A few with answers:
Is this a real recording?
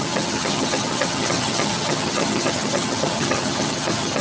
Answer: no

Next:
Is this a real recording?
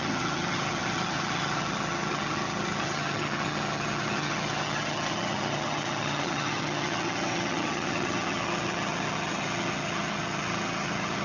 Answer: no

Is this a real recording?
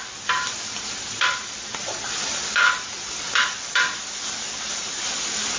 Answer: yes